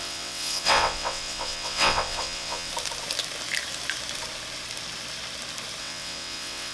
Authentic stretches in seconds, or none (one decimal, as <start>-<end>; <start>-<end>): 2.7-5.8

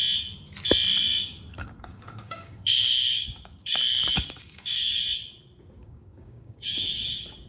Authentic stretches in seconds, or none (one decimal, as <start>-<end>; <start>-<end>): 0.0-0.9; 5.0-5.8

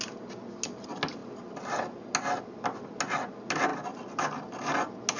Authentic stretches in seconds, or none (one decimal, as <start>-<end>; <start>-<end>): 0.0-5.2

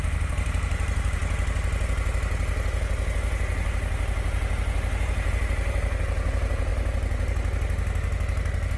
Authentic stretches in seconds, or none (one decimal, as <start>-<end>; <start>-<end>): 1.2-5.3; 6.7-8.8